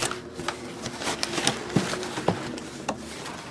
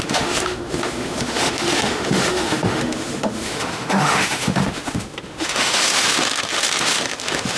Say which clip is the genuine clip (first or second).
first